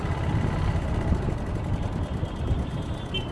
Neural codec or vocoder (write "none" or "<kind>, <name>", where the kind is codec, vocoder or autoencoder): none